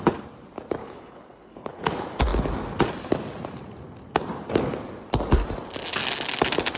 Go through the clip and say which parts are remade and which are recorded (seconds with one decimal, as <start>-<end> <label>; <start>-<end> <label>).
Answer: 0.0-0.8 recorded; 0.8-1.8 remade; 1.8-6.8 recorded